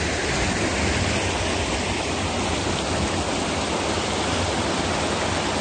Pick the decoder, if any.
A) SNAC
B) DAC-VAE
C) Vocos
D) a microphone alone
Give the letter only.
D